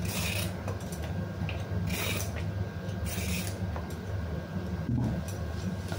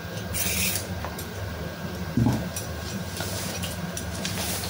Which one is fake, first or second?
second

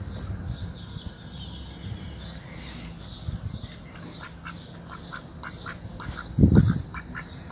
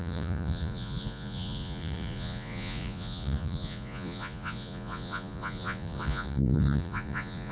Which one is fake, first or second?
second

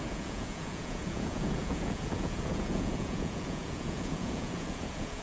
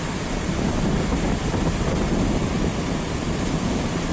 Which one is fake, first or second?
first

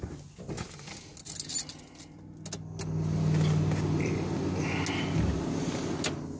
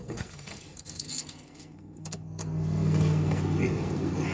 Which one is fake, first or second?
second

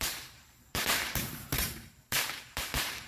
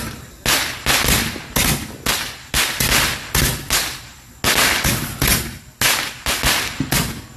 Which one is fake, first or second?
first